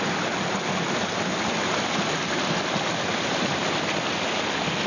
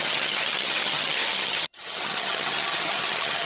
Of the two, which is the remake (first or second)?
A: second